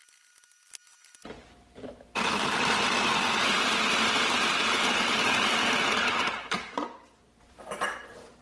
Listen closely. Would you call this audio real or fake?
real